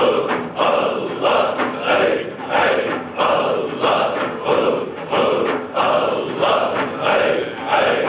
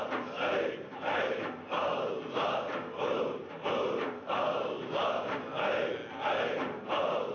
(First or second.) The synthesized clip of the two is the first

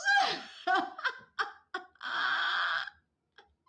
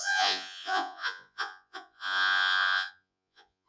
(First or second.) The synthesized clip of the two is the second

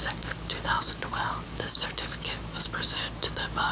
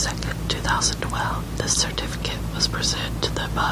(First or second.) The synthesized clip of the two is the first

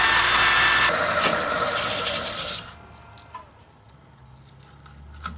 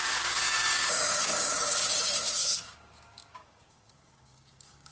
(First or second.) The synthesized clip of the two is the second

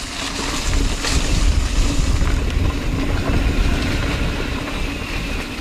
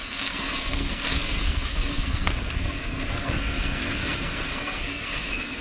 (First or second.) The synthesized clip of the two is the second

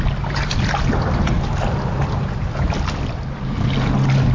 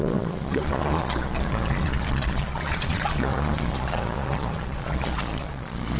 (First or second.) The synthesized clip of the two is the second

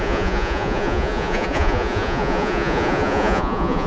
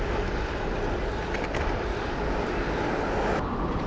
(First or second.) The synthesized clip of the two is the first